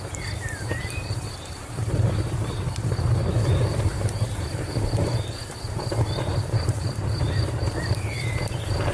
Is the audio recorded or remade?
remade